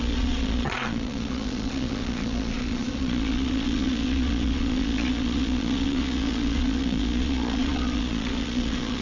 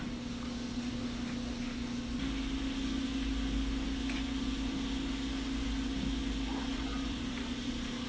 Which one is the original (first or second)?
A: second